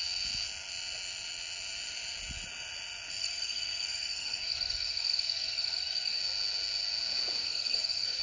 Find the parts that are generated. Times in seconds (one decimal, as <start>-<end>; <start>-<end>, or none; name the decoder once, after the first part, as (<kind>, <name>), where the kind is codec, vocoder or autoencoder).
3.2-6.2 (codec, SNAC); 7.4-8.2